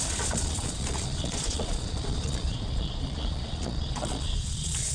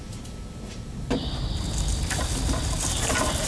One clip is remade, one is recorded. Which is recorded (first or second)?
second